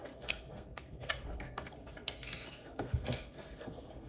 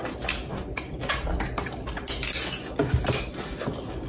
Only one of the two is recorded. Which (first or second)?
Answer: second